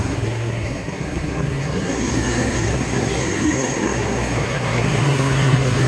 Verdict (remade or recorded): remade